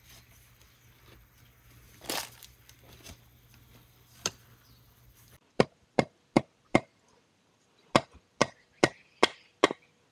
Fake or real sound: fake